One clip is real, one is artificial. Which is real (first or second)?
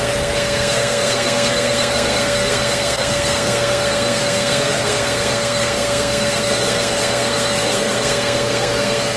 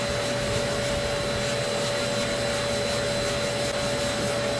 second